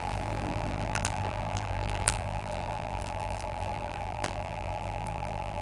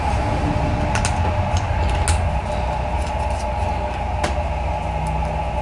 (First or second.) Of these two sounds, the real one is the second